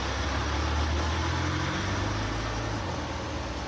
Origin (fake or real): real